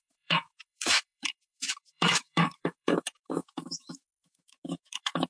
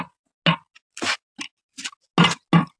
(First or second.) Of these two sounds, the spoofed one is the first